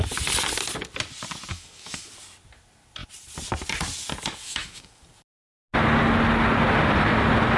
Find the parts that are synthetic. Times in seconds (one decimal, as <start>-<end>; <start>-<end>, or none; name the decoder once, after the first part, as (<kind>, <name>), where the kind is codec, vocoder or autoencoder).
1.5-2.1 (autoencoder, DAC-VAE); 4.4-5.0